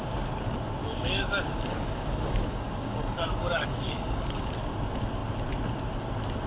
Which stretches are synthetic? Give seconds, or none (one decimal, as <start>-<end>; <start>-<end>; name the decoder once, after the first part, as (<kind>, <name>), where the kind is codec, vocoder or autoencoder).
0.8-4.5 (codec, DAC)